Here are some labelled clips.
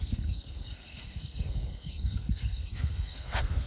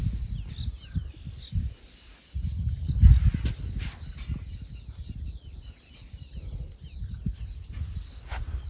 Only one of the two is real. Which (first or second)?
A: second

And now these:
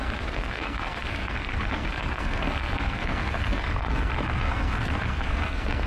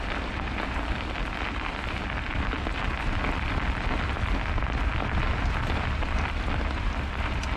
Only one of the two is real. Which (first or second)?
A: second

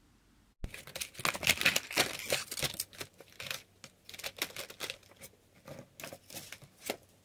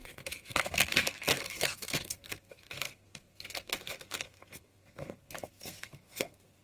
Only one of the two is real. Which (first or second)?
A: first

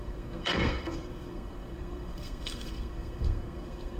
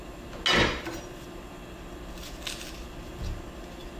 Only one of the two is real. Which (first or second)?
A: second